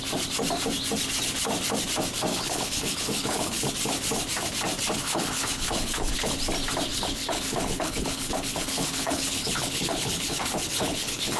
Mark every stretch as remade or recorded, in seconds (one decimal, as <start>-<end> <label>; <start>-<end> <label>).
0.0-2.3 recorded; 2.3-3.7 remade; 3.7-5.0 recorded; 5.0-6.4 remade; 6.4-6.9 recorded; 6.9-11.4 remade

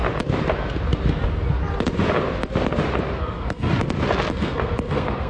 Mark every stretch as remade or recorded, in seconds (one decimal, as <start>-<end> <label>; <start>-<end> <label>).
0.0-3.2 recorded; 3.2-3.7 remade; 3.7-4.3 recorded; 4.3-5.3 remade

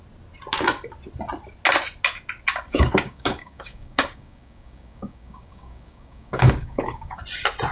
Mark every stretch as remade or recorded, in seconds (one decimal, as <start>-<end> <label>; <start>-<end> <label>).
0.0-2.7 recorded; 2.7-7.2 remade; 7.2-7.7 recorded